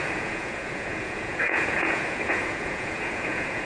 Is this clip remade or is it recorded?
remade